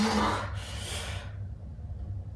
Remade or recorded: recorded